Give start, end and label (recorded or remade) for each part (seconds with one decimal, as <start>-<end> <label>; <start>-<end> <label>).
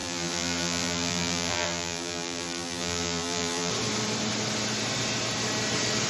0.0-3.7 remade; 3.7-6.1 recorded